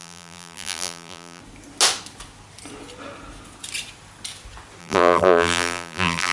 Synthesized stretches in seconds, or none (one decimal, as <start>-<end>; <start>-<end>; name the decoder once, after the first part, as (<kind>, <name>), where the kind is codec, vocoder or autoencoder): 0.0-1.4 (vocoder, BigVGAN v2); 4.8-6.3